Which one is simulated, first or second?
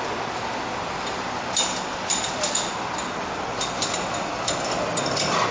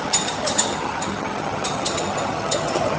second